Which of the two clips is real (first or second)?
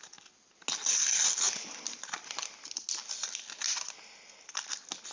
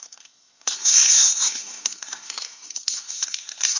first